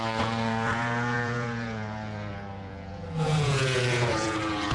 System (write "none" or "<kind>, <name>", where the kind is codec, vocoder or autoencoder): vocoder, Vocos